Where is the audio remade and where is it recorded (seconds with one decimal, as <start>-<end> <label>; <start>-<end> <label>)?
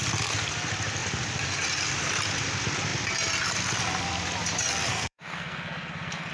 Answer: 0.0-4.9 recorded; 4.9-6.3 remade